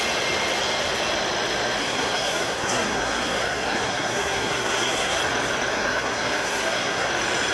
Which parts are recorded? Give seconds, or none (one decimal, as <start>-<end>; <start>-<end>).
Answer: 0.0-1.8; 5.2-5.7; 7.1-7.5